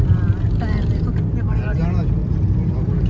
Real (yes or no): yes